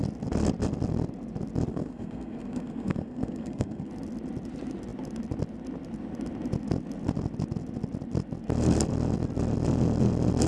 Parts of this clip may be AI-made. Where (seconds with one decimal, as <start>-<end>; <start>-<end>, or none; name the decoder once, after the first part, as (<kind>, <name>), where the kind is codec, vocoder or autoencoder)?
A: 1.7-3.9 (codec, SNAC)